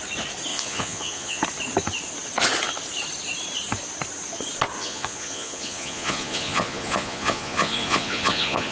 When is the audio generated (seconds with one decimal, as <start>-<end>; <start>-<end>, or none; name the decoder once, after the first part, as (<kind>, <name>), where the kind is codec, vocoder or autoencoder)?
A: 0.5-1.4 (vocoder, Vocos); 4.8-8.7